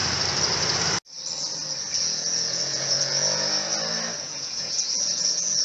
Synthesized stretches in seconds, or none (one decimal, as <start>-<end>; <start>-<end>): 2.0-3.7; 4.2-5.6